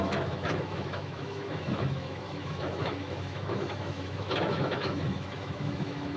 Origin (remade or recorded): remade